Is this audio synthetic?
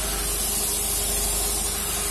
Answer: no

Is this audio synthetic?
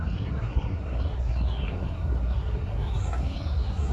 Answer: yes